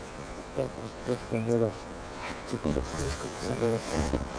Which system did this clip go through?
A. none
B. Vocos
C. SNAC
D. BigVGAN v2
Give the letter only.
B